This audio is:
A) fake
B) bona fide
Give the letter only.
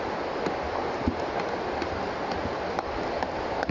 B